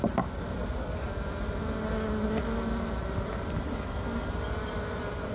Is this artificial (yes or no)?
no